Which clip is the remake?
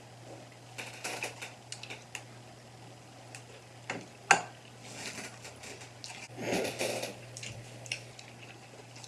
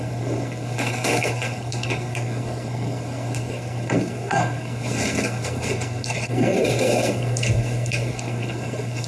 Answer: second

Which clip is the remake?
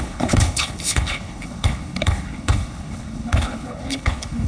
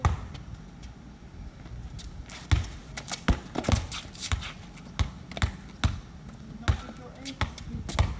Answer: first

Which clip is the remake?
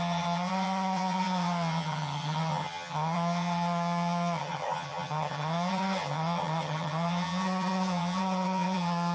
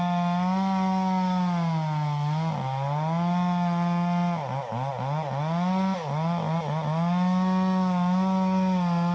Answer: first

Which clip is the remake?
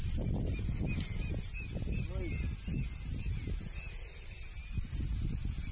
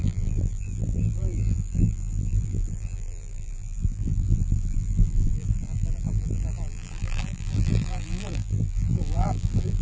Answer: second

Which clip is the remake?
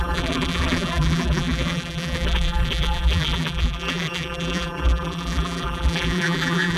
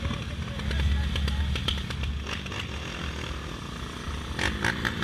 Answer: first